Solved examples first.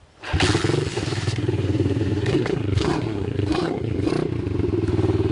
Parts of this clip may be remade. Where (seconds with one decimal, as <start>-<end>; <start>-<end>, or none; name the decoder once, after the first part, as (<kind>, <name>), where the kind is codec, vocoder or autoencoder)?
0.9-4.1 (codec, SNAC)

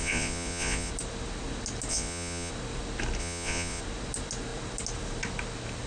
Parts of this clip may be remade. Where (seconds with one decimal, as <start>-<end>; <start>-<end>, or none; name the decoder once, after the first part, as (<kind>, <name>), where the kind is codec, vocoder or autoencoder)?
0.0-0.9 (vocoder, Vocos); 1.9-2.5; 3.2-3.8

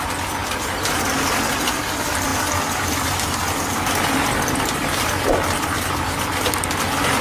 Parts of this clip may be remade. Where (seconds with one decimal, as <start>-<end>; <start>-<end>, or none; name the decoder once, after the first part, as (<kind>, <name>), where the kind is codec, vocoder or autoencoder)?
none

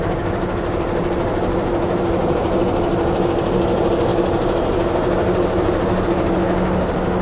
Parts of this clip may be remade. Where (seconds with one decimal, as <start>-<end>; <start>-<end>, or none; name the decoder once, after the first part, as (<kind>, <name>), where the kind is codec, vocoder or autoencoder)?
none

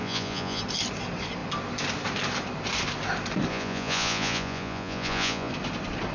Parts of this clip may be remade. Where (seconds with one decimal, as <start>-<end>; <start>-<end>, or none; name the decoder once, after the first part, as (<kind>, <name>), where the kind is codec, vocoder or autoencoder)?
0.0-0.6 (vocoder, Vocos); 3.5-5.5

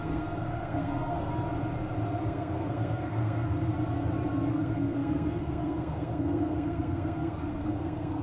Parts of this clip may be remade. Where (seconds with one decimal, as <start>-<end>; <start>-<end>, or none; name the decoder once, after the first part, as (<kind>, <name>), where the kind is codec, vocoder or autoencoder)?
0.0-1.3 (codec, SNAC); 2.2-3.7; 4.5-8.2

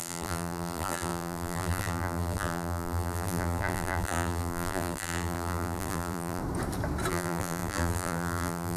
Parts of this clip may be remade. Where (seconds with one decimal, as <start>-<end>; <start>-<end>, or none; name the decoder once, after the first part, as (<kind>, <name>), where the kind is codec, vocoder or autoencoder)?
0.0-6.4 (vocoder, BigVGAN v2); 7.1-8.8